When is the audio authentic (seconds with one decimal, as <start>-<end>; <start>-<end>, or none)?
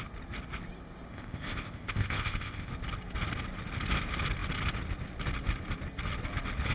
0.0-1.1; 2.7-6.7